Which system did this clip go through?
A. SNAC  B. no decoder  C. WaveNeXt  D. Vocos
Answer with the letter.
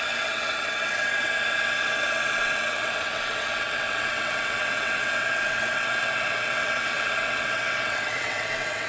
C